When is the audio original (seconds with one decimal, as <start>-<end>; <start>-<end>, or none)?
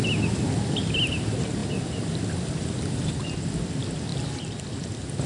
0.0-5.3